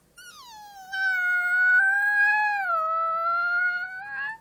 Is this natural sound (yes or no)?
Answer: yes